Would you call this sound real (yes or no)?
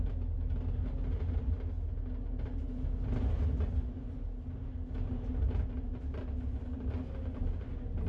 yes